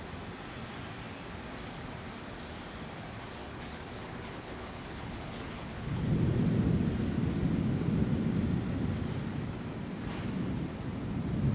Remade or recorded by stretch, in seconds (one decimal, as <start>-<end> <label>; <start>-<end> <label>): 0.0-3.4 recorded; 3.4-6.1 remade; 6.1-11.5 recorded